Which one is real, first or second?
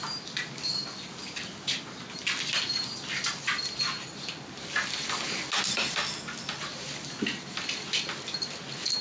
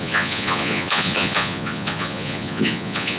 first